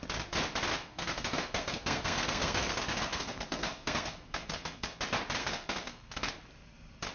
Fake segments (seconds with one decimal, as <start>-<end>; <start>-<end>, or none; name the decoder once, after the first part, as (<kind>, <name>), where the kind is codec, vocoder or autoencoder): 0.7-5.0 (codec, SNAC); 5.4-6.3